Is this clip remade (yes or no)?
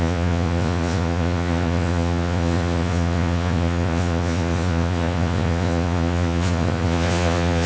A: yes